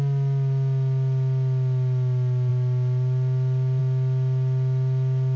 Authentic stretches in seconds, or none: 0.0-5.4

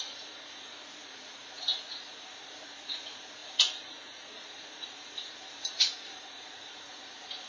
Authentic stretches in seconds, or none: none

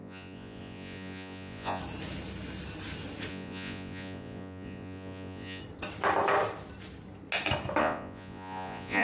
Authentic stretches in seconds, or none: 1.8-3.3; 5.6-7.8

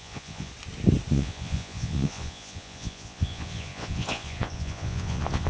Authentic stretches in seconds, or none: 0.5-1.1

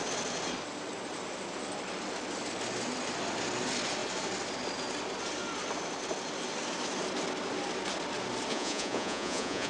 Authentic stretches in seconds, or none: 0.0-8.5